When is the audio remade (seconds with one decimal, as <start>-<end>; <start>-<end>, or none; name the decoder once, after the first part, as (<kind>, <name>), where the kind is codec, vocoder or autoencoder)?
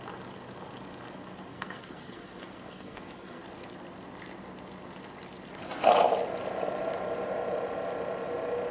1.5-3.4 (codec, SNAC)